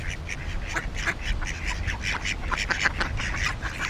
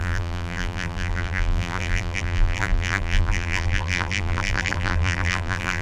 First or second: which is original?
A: first